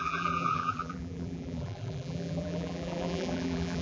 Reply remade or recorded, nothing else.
remade